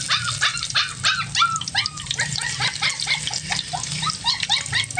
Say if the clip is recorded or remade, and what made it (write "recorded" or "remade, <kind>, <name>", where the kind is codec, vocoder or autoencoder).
recorded